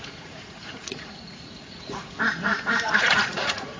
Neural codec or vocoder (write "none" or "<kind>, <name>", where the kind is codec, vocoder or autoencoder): vocoder, Vocos